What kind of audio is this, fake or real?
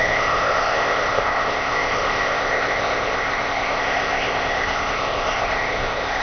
fake